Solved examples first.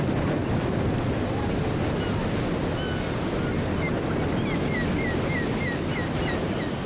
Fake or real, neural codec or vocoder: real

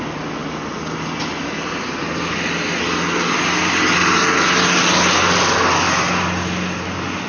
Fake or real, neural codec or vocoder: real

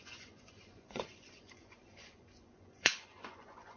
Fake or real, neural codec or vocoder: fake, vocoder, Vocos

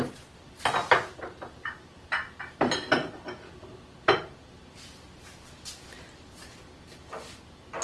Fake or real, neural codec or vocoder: real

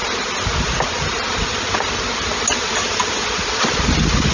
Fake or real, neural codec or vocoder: real